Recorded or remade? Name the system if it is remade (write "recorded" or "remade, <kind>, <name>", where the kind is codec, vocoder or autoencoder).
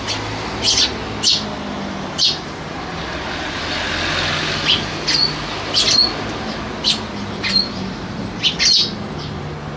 recorded